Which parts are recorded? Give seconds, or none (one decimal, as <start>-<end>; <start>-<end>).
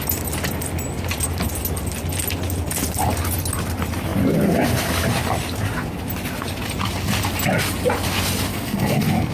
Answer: 0.0-8.5